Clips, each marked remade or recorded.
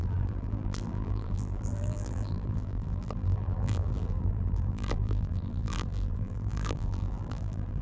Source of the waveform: remade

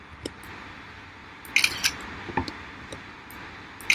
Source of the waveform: recorded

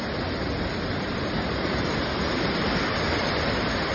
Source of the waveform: remade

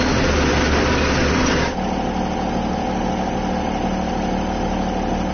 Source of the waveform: recorded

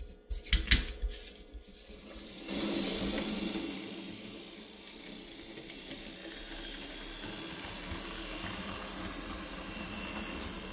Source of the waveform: recorded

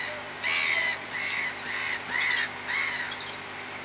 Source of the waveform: recorded